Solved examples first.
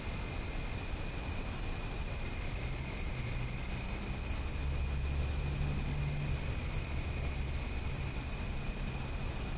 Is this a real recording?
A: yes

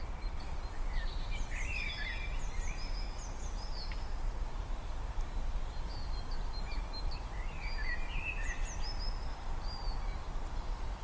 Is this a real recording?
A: yes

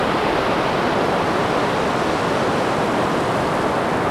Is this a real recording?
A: yes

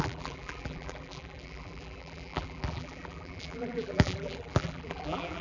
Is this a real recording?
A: no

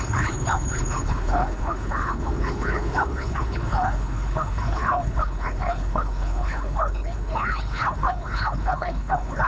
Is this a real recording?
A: no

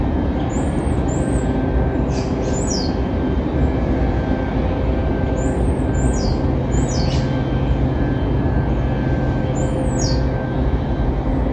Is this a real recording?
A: yes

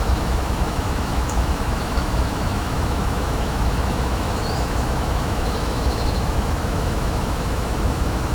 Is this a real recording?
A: no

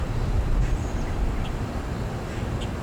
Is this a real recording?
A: no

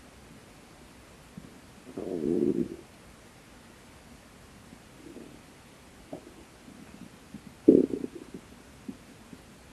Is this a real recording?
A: yes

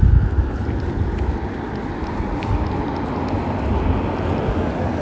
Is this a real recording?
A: yes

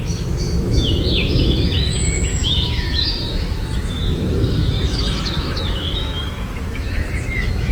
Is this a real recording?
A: no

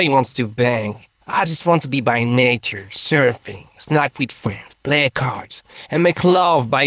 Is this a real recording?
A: no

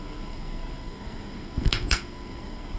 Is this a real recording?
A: no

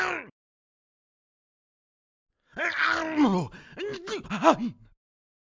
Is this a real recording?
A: yes